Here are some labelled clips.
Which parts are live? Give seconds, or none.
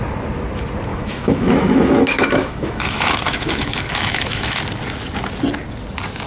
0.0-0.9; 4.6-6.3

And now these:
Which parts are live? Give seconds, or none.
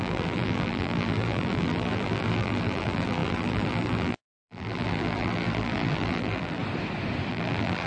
6.6-7.3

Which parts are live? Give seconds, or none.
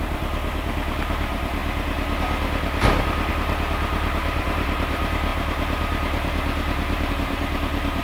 1.6-3.3